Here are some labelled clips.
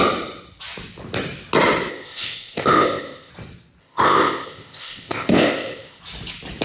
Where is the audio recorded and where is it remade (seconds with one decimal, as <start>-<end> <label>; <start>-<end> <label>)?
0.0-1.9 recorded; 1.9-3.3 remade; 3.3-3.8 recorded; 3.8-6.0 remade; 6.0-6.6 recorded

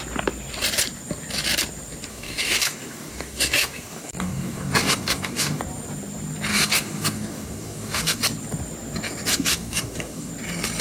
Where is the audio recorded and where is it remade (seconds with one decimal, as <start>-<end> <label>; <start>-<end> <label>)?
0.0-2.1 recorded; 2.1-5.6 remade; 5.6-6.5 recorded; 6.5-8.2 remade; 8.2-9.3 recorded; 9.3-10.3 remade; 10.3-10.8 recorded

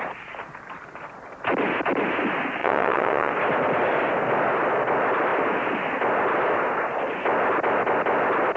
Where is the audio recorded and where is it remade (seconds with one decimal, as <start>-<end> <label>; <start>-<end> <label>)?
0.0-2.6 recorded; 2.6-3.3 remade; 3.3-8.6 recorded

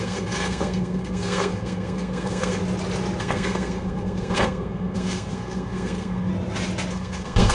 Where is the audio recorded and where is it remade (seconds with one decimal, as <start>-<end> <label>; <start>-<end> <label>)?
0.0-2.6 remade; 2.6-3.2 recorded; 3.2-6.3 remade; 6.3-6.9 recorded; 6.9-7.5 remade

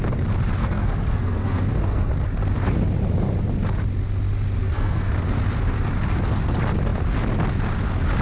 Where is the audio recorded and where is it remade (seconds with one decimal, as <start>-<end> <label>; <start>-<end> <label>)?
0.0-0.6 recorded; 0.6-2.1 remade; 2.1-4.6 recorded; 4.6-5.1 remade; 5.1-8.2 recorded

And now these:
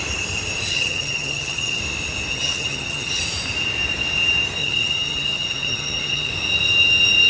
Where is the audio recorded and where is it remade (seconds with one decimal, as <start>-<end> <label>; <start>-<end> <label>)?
0.0-0.7 recorded; 0.7-1.8 remade; 1.8-2.3 recorded; 2.3-3.2 remade; 3.2-4.6 recorded; 4.6-6.3 remade; 6.3-7.3 recorded

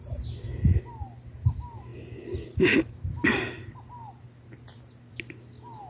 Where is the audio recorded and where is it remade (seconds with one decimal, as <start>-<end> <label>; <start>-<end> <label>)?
0.0-5.9 recorded

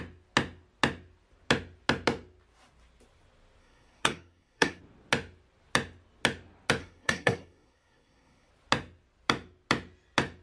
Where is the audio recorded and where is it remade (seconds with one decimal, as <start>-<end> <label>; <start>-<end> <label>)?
0.0-3.6 recorded; 3.6-4.8 remade; 4.8-6.8 recorded; 6.8-8.5 remade; 8.5-10.4 recorded